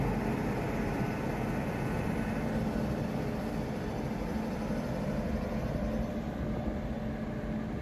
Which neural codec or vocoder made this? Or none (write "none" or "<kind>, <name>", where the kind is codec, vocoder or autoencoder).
none